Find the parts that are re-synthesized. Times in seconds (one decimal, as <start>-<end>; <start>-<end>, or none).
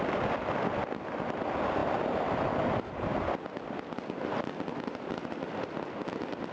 none